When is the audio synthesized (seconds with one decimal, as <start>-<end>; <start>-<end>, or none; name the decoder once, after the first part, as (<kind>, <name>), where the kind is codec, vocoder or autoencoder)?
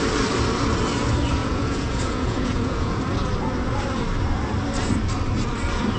1.4-3.0 (vocoder, Vocos)